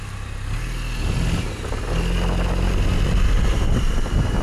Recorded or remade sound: recorded